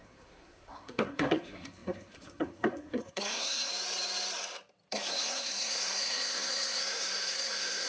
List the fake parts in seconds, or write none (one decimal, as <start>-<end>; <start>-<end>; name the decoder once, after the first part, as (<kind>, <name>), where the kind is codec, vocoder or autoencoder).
0.0-3.7 (codec, SNAC); 4.9-7.9